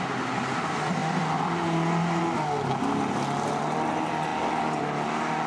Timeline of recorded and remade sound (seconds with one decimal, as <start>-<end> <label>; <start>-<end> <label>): 0.0-5.5 recorded